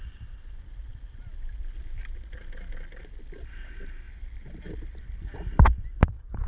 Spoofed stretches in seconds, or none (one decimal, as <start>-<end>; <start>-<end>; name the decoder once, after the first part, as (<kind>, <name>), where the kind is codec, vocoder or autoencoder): none